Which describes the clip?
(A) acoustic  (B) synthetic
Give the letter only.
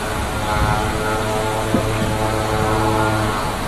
A